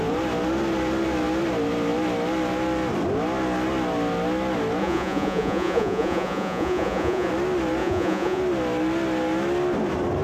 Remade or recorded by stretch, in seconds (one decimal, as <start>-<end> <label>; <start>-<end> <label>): 0.0-4.8 recorded; 4.8-7.3 remade; 7.3-7.8 recorded; 7.8-8.4 remade; 8.4-10.2 recorded